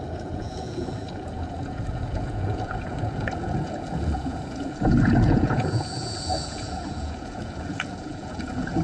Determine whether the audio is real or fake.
fake